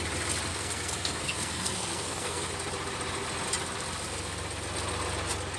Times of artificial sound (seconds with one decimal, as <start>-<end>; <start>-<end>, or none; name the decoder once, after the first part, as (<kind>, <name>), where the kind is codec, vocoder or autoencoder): 0.5-2.5 (codec, SNAC)